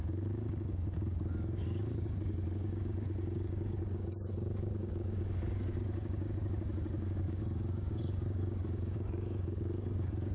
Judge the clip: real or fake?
fake